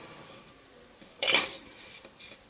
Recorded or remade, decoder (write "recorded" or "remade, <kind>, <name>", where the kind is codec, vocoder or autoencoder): recorded